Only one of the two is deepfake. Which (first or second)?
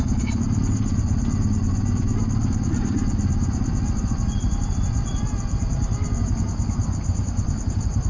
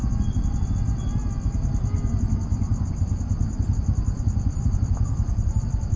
first